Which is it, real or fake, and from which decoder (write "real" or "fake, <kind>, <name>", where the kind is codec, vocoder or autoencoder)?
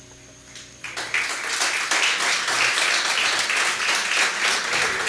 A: real